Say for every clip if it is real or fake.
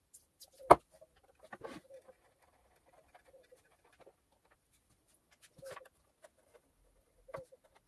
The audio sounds real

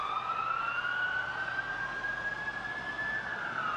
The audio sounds real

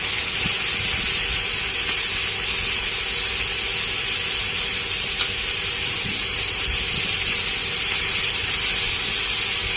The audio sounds real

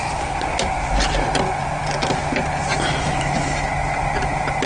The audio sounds real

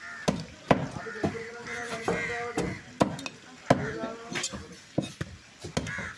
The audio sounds real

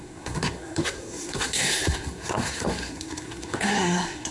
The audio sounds fake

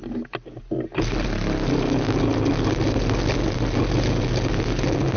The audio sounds real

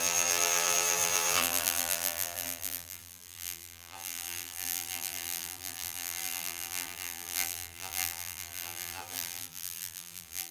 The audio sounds fake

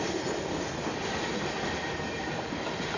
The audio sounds real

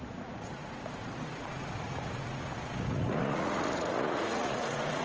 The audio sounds fake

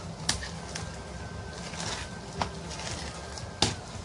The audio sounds real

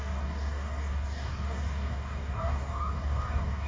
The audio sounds fake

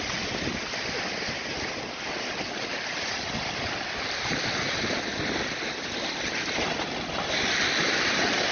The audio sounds real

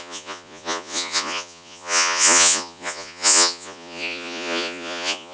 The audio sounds fake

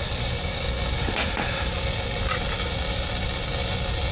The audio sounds real